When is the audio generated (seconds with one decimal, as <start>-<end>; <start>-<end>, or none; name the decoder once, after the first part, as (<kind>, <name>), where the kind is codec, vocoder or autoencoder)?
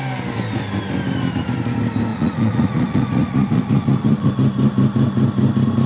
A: 2.1-4.3 (vocoder, Vocos)